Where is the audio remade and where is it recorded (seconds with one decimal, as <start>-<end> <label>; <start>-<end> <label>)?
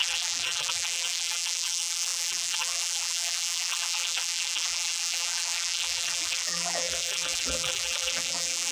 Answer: 0.0-8.7 remade